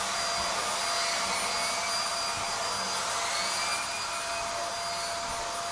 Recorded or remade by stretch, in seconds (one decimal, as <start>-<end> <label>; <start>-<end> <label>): 0.0-5.7 recorded